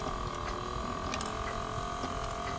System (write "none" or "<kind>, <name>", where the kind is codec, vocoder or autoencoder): none